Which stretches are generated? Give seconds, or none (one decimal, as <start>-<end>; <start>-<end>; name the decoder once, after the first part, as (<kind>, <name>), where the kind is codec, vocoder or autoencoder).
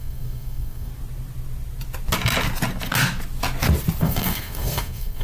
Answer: 0.0-0.9 (codec, SNAC); 4.0-5.2